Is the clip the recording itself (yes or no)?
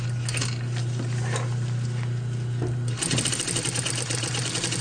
yes